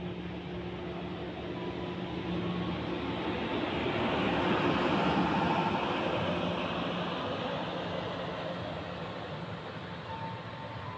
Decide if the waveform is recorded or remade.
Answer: recorded